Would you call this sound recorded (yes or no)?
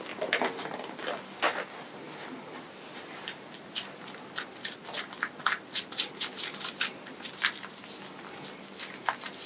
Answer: yes